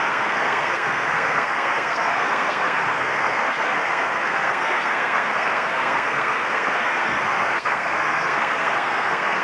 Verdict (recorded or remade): remade